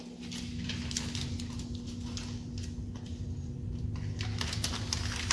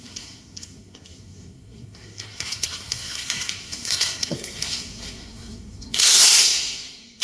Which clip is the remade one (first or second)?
second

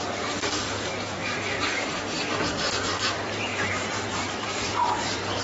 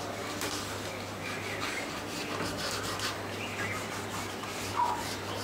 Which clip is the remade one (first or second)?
first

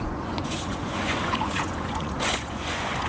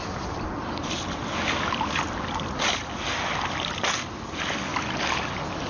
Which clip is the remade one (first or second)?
first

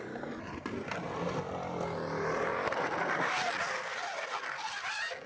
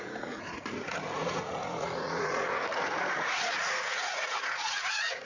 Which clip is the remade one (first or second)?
second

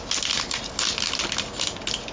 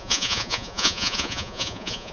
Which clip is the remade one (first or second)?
second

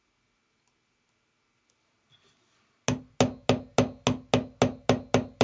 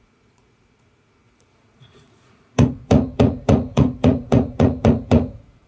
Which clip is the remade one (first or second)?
second